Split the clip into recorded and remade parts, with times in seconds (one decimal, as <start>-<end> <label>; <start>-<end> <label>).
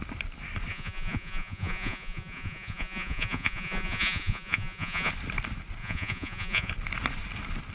0.0-0.7 recorded; 0.7-5.1 remade; 5.1-5.8 recorded; 5.8-6.7 remade; 6.7-7.7 recorded